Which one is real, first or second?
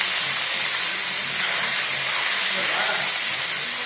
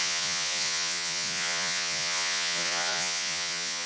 first